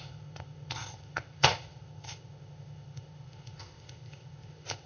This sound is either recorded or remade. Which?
remade